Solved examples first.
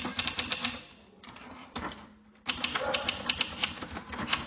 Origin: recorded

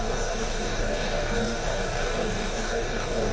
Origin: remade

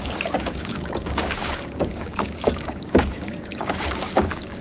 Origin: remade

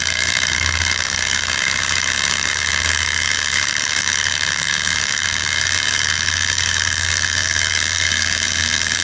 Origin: remade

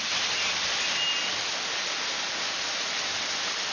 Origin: recorded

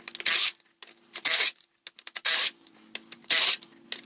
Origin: recorded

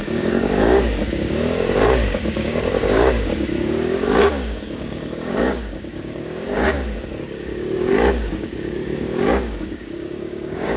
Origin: remade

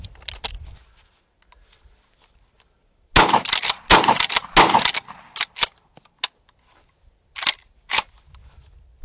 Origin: recorded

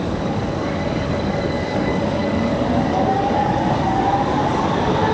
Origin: remade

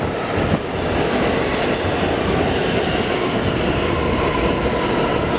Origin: recorded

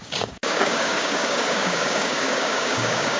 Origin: remade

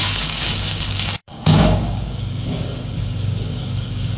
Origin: remade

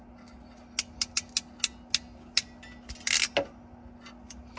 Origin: recorded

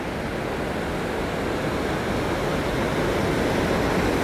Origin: recorded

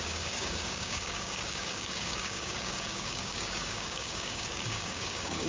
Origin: remade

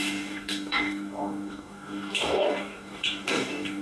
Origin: remade